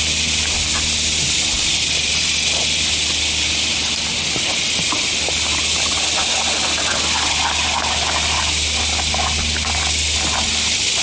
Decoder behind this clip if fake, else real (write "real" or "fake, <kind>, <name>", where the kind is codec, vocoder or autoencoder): real